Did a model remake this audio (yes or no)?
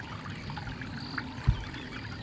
no